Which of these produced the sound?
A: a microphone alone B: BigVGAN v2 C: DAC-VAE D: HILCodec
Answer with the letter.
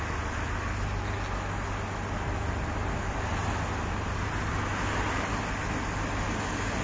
A